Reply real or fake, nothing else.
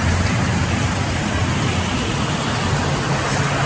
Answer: real